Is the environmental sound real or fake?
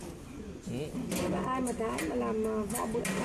real